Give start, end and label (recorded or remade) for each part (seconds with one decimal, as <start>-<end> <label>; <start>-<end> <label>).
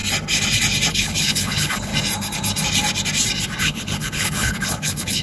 0.0-0.9 recorded; 0.9-1.9 remade; 1.9-3.6 recorded; 3.6-5.2 remade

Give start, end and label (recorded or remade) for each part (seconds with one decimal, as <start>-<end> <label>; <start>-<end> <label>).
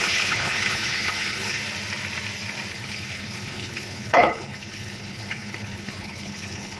0.0-1.6 remade; 1.6-2.7 recorded; 2.7-6.8 remade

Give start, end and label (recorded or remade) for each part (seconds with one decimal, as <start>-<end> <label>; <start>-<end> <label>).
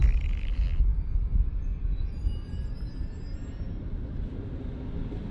0.0-5.3 recorded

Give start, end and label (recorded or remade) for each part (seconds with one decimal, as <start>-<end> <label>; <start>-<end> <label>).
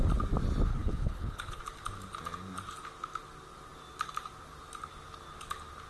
0.0-0.7 recorded; 0.7-1.6 remade; 1.6-5.9 recorded